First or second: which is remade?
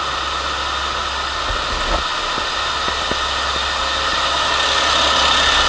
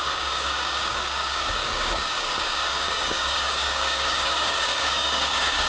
second